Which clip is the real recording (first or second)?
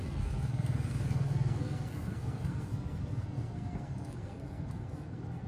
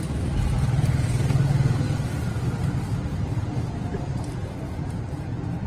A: second